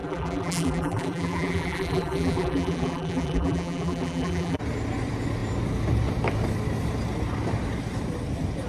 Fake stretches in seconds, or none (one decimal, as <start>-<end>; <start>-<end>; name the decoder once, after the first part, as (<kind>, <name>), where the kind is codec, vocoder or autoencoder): 0.0-4.6 (vocoder, BigVGAN v2)